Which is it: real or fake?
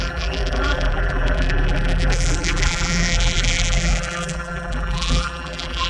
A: fake